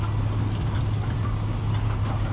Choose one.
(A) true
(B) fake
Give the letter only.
A